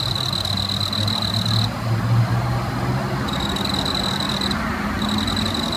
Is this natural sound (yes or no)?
yes